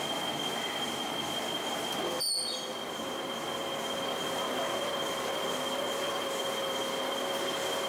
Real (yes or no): yes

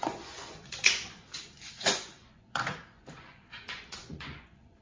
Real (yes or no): no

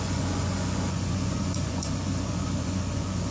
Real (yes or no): no